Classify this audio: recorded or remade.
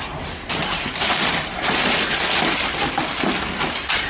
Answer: recorded